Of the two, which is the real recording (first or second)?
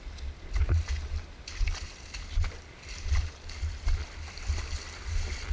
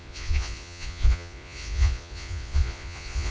first